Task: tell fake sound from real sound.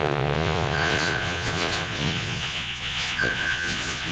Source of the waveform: fake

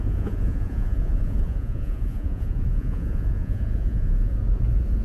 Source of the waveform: fake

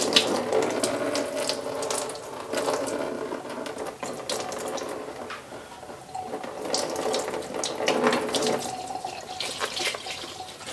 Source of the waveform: real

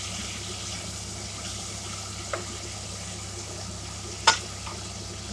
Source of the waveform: real